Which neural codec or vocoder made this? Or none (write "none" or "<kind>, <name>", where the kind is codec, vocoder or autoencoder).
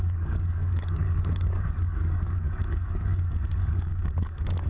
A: codec, DAC